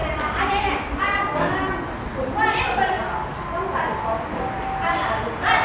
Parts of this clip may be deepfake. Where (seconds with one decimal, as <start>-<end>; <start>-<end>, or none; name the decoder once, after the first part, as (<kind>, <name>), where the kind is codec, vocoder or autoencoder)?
0.0-0.6 (vocoder, BigVGAN v2)